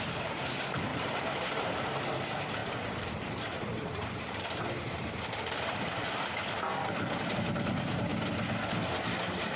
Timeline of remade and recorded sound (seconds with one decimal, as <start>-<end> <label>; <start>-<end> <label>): 0.0-0.9 remade; 0.9-1.6 recorded; 1.6-6.0 remade; 6.0-7.7 recorded; 7.7-8.1 remade; 8.1-9.0 recorded; 9.0-9.6 remade